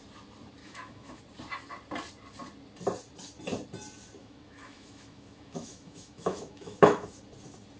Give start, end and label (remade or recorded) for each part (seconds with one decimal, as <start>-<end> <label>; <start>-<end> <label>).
0.0-0.6 recorded; 0.6-1.2 remade; 1.2-4.2 recorded; 4.2-7.2 remade; 7.2-7.8 recorded